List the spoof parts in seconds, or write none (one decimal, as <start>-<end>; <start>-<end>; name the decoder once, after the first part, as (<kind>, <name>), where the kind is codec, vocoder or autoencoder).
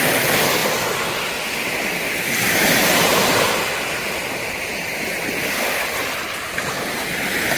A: none